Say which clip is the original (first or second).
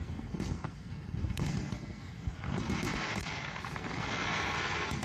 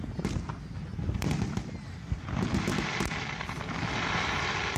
second